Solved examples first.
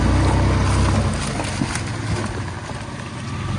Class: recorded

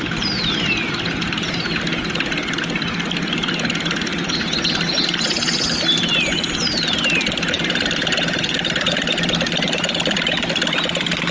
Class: recorded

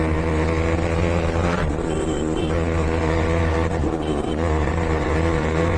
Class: remade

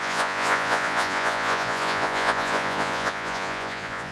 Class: remade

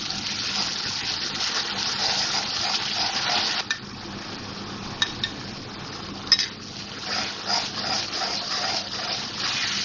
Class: recorded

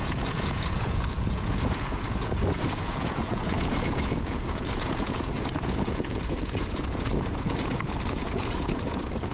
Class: remade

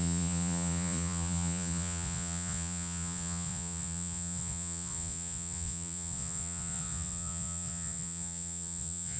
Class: remade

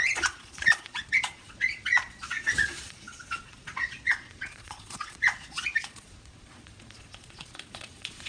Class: remade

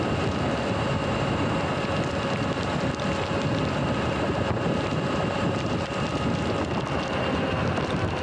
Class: recorded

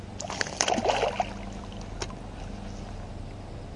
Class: recorded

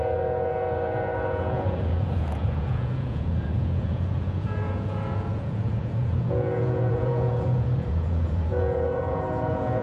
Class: remade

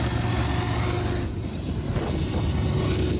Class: recorded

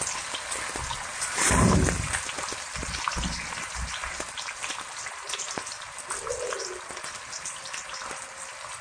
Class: recorded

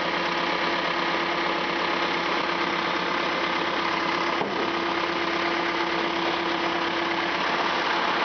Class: recorded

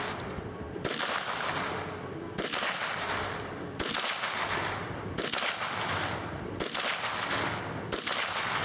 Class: recorded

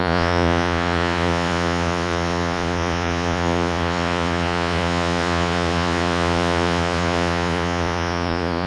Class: remade